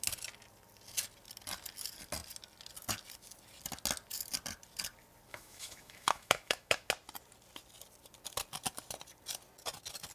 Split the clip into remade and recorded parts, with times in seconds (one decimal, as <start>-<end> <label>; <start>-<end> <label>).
0.0-5.3 recorded; 5.3-6.9 remade; 6.9-10.1 recorded